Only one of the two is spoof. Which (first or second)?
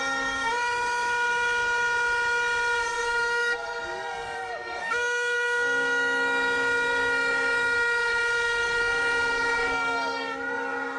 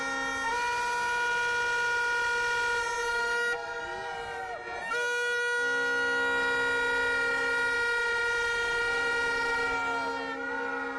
first